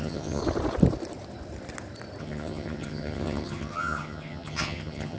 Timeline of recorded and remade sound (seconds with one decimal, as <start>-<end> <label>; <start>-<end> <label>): 0.0-0.4 remade; 0.4-2.2 recorded; 2.2-5.2 remade